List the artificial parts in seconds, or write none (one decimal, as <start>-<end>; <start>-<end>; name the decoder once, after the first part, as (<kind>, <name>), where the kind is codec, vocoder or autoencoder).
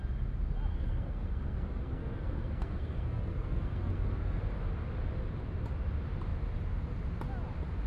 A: 0.7-4.4 (codec, SNAC)